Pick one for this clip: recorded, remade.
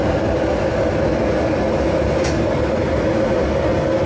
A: recorded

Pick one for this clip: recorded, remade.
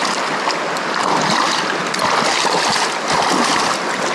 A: remade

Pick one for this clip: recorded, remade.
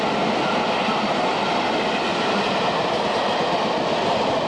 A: recorded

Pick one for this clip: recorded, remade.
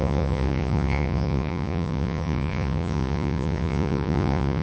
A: remade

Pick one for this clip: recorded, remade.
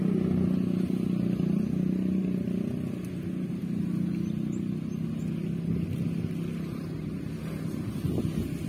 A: recorded